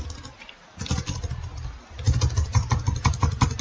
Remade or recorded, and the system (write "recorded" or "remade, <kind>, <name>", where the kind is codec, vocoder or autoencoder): recorded